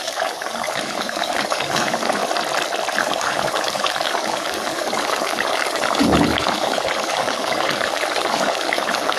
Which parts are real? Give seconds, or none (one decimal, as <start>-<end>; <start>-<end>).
2.2-3.0